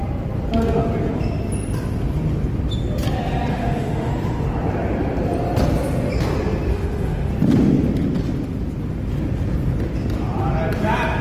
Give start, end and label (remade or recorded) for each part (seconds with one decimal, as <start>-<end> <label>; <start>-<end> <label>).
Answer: 0.0-3.5 recorded; 3.5-4.1 remade; 4.1-6.7 recorded; 6.7-7.3 remade; 7.3-11.2 recorded